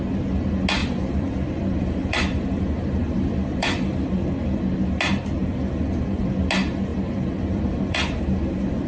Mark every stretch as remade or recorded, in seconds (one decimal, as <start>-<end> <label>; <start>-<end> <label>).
0.0-0.8 recorded; 0.8-4.2 remade; 4.2-5.4 recorded; 5.4-6.3 remade; 6.3-6.9 recorded; 6.9-8.9 remade